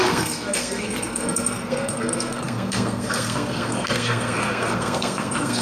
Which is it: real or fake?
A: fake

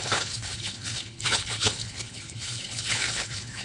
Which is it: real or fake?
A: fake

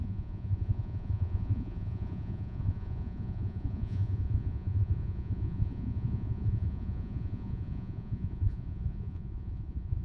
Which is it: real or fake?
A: fake